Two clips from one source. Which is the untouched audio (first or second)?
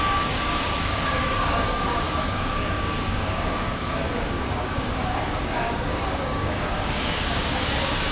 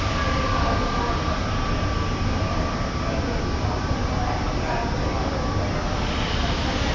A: second